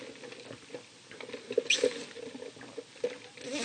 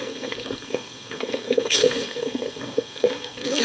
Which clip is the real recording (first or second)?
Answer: first